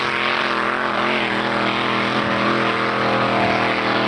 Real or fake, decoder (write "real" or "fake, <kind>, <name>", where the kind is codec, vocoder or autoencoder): real